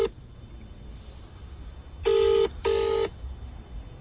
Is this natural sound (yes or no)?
yes